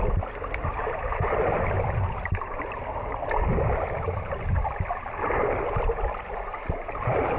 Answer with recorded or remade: remade